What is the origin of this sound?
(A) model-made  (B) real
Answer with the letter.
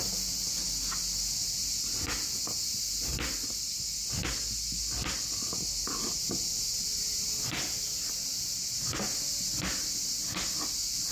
B